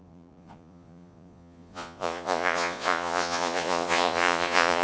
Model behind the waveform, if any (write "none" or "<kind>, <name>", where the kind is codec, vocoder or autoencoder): vocoder, Vocos